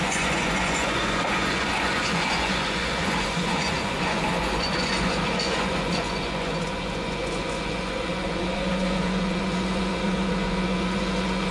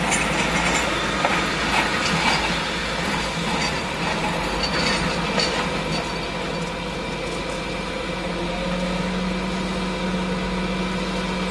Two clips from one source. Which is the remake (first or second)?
first